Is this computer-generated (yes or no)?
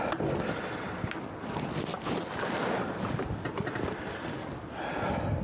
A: no